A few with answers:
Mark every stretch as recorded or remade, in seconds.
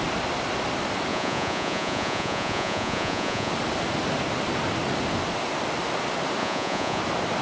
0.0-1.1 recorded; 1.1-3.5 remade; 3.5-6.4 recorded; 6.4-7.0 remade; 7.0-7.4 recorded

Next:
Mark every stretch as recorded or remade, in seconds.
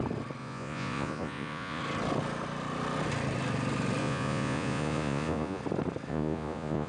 0.0-0.4 recorded; 0.4-1.8 remade; 1.8-4.0 recorded; 4.0-5.6 remade; 5.6-6.1 recorded; 6.1-6.9 remade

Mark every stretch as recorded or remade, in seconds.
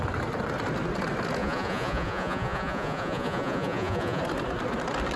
0.0-1.4 recorded; 1.4-4.2 remade; 4.2-5.2 recorded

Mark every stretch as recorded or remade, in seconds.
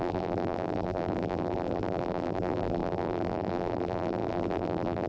0.0-5.1 remade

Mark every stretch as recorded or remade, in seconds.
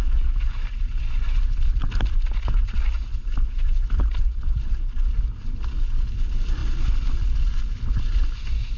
0.0-8.8 recorded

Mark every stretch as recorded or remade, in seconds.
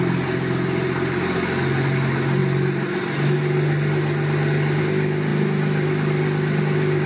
0.0-7.1 recorded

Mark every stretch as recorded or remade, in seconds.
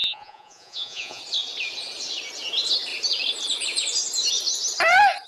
0.0-1.2 remade; 1.2-5.3 recorded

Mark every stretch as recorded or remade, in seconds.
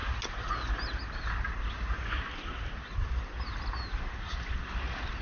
0.0-5.2 recorded